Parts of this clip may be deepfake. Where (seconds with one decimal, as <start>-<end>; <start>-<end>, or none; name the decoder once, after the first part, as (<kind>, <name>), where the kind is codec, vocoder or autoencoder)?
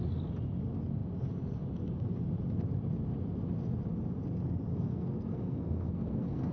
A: 4.7-6.5 (codec, SNAC)